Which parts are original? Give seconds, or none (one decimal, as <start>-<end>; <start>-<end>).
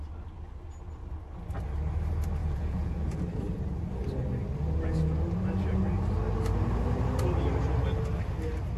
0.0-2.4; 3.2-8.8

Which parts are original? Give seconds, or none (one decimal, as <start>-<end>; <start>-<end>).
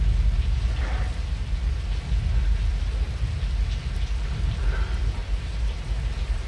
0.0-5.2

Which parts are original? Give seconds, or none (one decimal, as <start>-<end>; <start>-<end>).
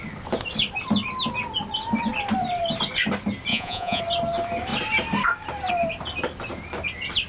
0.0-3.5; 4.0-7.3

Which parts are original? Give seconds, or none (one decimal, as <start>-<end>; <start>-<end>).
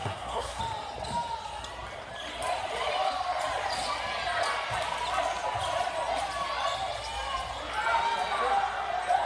0.6-9.3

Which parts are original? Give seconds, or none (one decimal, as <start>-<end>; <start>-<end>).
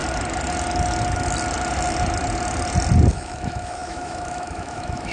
0.0-3.1